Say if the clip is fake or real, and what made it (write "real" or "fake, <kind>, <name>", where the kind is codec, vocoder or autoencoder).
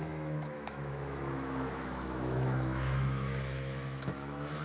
fake, autoencoder, DAC-VAE